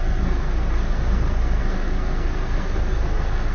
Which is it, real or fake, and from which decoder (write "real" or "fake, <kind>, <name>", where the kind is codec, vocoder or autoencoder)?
fake, codec, SNAC